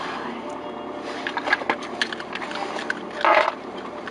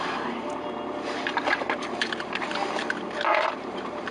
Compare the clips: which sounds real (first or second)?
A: first